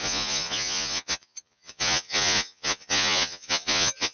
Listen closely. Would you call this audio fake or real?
fake